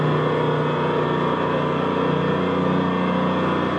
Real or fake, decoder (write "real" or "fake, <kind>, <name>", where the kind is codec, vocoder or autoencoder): real